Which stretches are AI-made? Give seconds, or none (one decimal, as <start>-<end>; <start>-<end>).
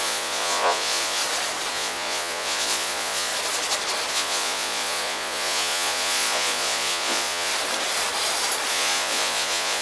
0.0-1.2; 1.7-3.3; 4.1-7.5; 8.7-9.8